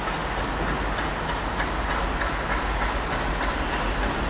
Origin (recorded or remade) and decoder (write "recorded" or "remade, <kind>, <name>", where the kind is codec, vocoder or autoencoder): recorded